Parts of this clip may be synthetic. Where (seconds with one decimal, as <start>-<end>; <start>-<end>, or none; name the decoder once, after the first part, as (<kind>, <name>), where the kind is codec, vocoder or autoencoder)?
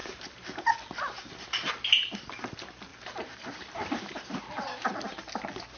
0.0-1.7 (vocoder, BigVGAN v2); 2.9-4.4